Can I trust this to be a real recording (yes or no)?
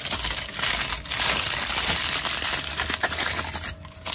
yes